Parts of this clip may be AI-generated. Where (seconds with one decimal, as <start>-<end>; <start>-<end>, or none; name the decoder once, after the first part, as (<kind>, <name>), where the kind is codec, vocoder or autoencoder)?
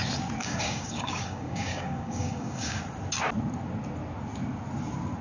0.4-2.8 (codec, DAC)